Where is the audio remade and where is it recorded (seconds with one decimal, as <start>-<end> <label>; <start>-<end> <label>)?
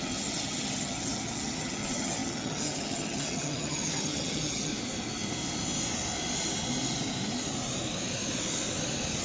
0.0-4.7 remade; 4.7-9.2 recorded